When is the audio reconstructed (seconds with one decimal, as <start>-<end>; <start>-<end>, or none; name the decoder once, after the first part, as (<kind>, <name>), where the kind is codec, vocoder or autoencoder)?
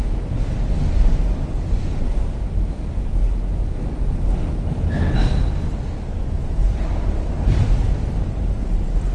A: 6.4-7.1 (vocoder, BigVGAN v2)